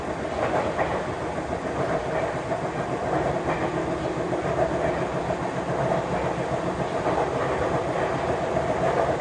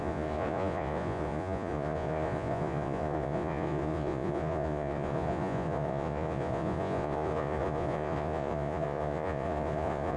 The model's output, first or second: second